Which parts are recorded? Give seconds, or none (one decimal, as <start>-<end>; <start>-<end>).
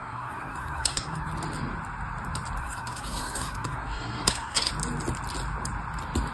1.3-2.6; 4.7-6.3